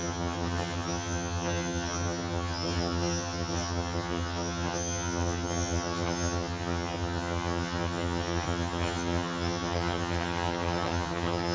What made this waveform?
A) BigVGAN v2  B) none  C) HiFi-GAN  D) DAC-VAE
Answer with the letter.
C